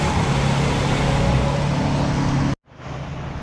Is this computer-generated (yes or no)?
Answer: no